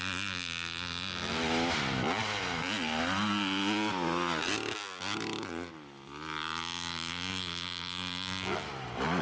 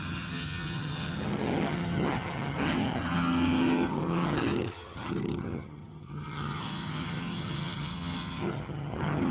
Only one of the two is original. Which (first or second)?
first